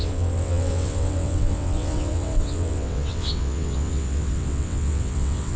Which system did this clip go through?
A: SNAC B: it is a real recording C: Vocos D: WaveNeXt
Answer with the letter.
D